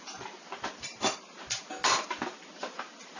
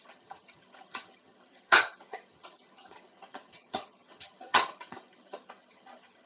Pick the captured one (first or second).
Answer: first